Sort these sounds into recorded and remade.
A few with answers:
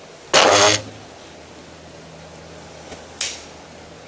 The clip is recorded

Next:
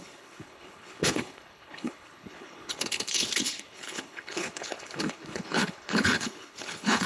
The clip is remade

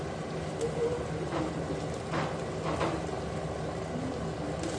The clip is recorded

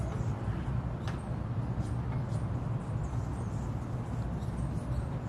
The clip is recorded